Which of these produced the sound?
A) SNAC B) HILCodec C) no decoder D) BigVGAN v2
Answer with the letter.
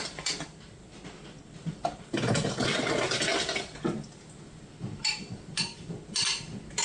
C